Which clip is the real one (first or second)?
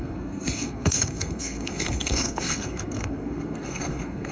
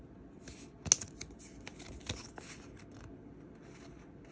second